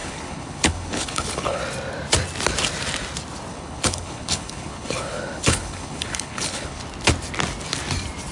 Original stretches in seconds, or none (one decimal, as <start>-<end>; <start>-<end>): 1.6-3.5; 6.8-8.3